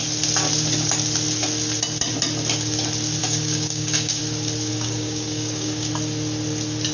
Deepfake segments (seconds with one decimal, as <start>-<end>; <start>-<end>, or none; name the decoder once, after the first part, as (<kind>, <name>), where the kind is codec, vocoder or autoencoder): 3.2-4.2 (codec, DAC); 4.7-5.9